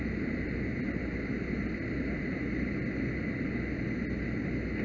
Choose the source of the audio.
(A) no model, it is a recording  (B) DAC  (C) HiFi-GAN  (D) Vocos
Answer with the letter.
A